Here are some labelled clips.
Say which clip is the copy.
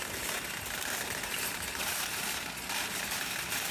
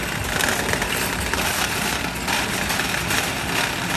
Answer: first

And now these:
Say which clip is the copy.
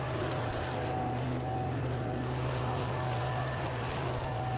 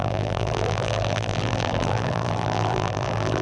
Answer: second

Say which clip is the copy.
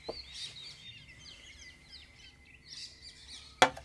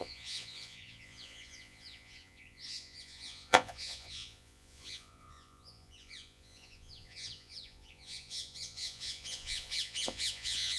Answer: second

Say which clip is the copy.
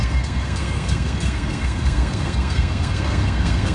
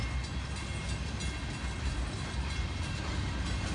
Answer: first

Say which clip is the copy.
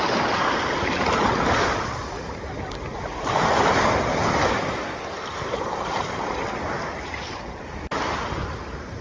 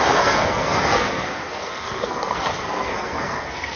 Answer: second